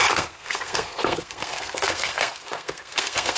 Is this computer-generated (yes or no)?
yes